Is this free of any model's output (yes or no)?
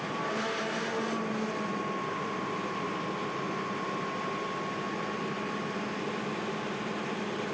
yes